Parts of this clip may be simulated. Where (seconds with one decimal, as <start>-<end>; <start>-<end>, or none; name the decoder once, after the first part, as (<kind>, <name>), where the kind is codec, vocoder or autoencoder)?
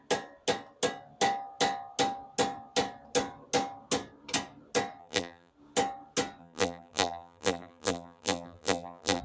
5.0-5.5 (vocoder, BigVGAN v2); 6.4-9.2